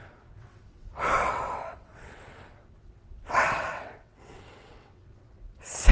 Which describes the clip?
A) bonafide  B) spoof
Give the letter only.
B